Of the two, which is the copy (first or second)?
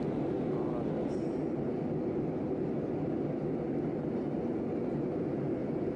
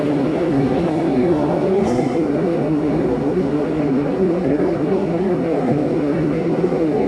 second